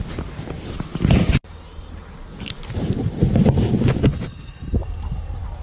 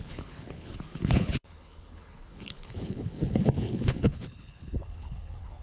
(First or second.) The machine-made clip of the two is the second